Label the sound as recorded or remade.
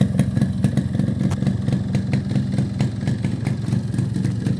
recorded